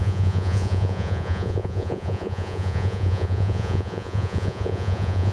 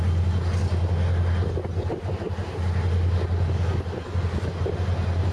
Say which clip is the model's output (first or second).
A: first